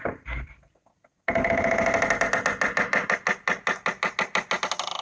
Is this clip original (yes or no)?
yes